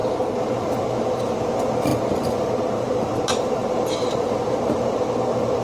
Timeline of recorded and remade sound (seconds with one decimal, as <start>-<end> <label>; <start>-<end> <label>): 0.0-1.2 recorded; 1.2-1.9 remade; 1.9-3.1 recorded; 3.1-5.6 remade